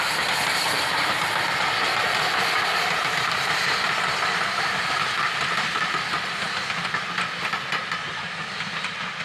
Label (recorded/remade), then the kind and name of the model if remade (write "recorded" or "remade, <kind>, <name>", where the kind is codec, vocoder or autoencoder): recorded